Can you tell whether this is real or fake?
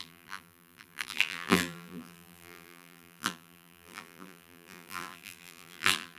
fake